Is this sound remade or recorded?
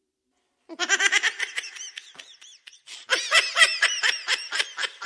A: remade